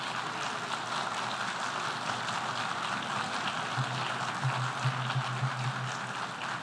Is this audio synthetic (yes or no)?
no